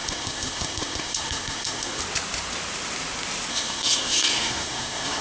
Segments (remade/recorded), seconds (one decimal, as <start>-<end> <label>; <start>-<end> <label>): 0.0-2.0 remade; 2.0-3.5 recorded; 3.5-5.2 remade